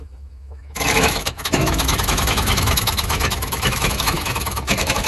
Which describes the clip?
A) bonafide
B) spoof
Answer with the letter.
B